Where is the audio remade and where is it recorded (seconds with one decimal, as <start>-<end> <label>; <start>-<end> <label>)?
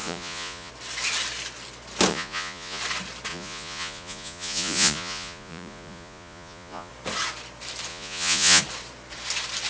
0.0-0.7 remade; 0.7-2.1 recorded; 2.1-2.8 remade; 2.8-3.3 recorded; 3.3-6.9 remade; 6.9-7.9 recorded; 7.9-8.6 remade; 8.6-9.7 recorded